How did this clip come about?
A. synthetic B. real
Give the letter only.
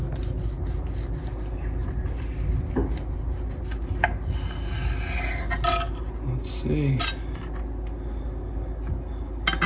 B